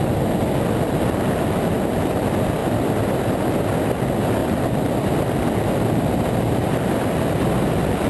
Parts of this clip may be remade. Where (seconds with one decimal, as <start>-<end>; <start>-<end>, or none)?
2.6-3.6; 4.4-5.5